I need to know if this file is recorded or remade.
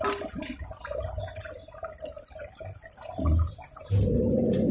recorded